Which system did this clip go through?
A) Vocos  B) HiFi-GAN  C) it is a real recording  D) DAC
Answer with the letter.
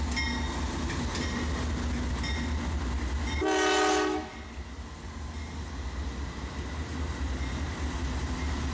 C